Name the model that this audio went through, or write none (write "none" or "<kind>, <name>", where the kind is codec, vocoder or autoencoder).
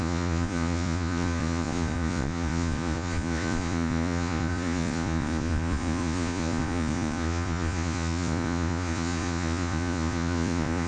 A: vocoder, Vocos